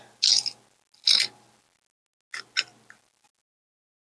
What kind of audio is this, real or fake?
real